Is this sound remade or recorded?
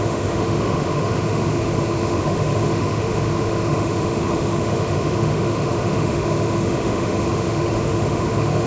remade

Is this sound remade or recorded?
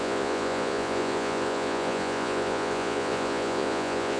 remade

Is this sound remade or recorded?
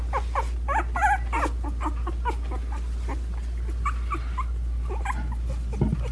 recorded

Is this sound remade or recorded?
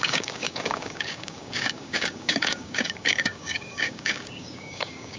remade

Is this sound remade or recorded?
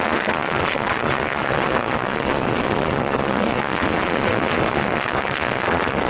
remade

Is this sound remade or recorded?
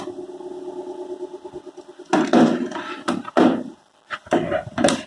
recorded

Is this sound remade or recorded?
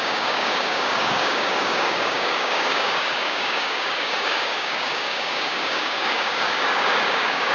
remade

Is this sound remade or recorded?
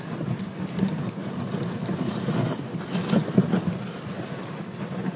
recorded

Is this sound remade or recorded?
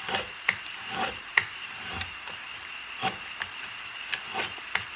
recorded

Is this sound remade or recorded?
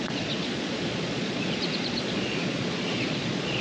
remade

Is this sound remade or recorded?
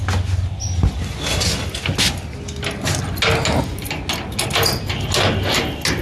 recorded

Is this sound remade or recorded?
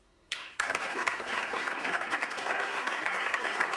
remade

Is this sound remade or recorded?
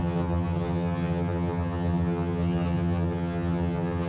remade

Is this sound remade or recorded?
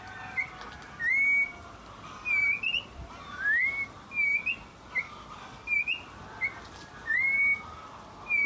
recorded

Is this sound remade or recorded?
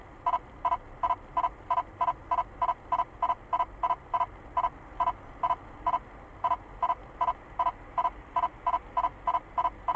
recorded